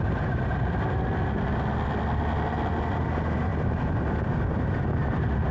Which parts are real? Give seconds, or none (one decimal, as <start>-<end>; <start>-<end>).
0.0-5.5